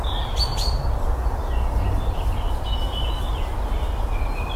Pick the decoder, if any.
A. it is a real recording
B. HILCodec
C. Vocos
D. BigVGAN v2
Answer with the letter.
A